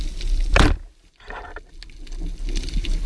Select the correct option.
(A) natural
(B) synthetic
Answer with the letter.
A